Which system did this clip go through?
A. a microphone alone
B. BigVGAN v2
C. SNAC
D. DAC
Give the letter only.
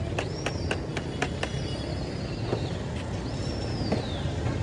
A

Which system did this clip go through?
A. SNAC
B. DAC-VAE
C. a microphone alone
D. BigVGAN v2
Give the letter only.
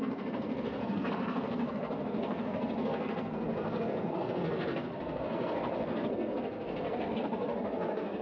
A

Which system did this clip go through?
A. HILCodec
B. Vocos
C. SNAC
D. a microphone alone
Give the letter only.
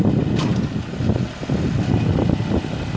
D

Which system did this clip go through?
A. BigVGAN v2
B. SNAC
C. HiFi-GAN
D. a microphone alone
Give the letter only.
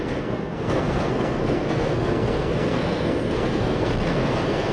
B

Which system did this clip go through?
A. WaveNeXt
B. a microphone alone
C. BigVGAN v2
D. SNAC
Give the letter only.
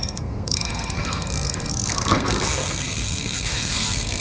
D